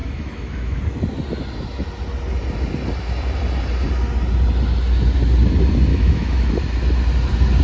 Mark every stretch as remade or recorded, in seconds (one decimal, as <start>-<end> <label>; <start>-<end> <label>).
0.0-0.8 remade; 0.8-5.9 recorded; 5.9-6.5 remade; 6.5-7.6 recorded